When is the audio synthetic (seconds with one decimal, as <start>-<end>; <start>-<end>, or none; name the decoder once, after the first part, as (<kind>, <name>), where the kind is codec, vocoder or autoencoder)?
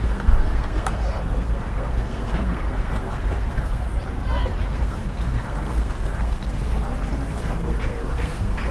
0.0-3.9 (codec, SNAC); 4.7-6.8; 7.3-8.7